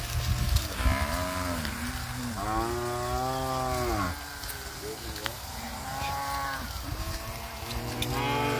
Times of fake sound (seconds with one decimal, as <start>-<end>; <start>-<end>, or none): 5.2-8.1